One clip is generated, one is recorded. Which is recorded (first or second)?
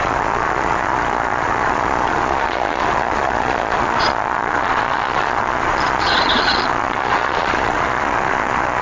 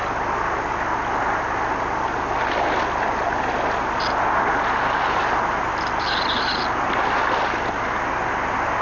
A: second